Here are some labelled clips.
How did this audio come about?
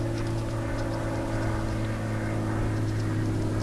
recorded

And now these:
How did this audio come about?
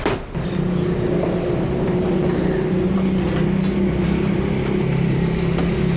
recorded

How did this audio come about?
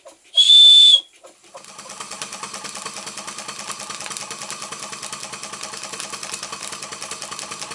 recorded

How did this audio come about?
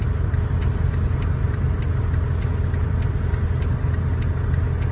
recorded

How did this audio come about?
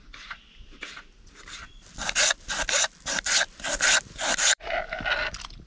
remade